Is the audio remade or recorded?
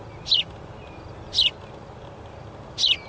recorded